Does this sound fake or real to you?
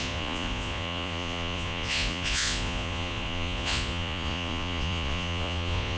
fake